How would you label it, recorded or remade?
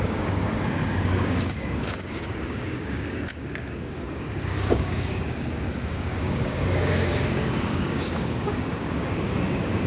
remade